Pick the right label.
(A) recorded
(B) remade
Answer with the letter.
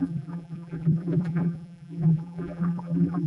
B